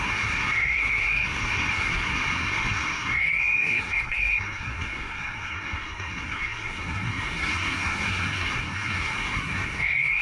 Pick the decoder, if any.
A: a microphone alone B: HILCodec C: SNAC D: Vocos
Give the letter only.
C